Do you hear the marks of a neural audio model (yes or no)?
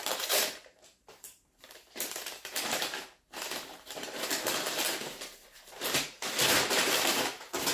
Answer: yes